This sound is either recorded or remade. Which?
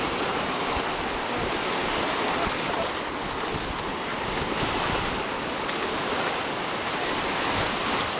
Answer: recorded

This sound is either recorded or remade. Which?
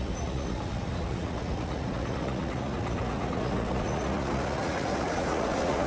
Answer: remade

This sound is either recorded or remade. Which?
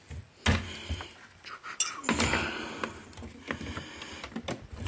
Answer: recorded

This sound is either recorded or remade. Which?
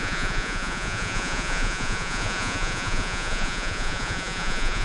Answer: remade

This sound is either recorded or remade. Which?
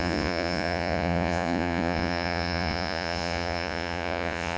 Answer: remade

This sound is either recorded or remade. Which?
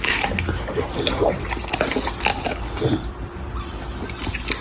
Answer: recorded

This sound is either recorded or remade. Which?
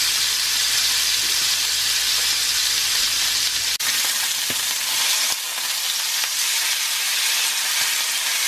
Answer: recorded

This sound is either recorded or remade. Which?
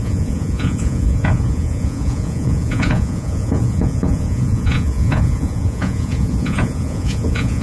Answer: remade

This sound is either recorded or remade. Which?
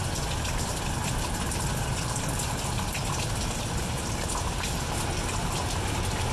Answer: recorded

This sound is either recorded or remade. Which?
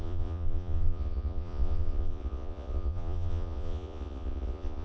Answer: remade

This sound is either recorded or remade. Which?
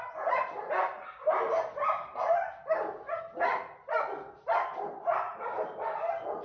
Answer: recorded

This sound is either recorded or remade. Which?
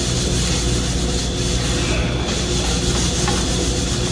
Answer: recorded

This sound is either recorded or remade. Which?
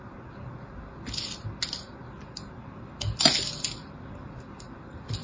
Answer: recorded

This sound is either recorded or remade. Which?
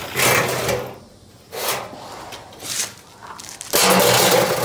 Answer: recorded